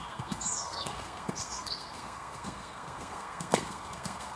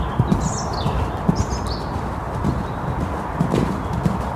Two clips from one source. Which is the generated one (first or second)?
first